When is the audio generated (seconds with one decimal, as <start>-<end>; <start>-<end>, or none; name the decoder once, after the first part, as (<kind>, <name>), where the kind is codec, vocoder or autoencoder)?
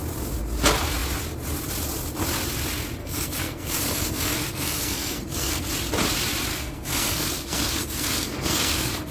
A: 3.0-5.7 (codec, SNAC); 6.5-9.1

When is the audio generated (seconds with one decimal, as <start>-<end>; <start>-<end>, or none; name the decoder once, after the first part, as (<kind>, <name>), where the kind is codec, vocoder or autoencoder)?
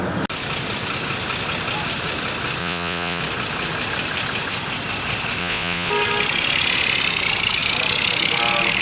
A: 2.6-3.2 (vocoder, Vocos); 5.4-5.9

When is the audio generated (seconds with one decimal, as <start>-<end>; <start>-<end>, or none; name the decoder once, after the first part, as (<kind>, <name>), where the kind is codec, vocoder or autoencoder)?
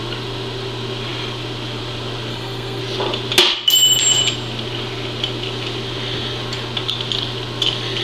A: 2.3-2.8 (codec, SNAC)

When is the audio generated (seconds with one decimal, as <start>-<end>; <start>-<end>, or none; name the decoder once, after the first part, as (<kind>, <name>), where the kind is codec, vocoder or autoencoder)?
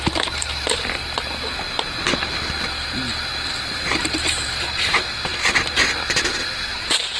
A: 0.0-1.0 (vocoder, BigVGAN v2); 3.6-5.3; 6.3-7.2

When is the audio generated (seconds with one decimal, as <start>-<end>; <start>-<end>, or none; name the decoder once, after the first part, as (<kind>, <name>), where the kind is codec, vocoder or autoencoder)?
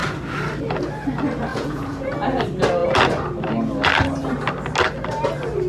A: 1.5-2.1 (vocoder, Vocos)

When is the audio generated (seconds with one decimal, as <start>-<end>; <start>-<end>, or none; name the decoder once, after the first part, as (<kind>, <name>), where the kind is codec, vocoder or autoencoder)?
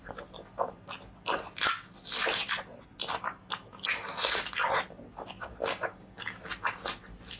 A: 5.6-6.5 (codec, DAC)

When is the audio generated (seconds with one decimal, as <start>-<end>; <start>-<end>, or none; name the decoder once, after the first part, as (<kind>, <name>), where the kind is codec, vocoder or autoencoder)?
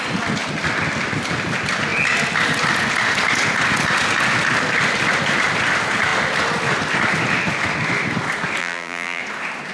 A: 8.6-9.2 (vocoder, BigVGAN v2)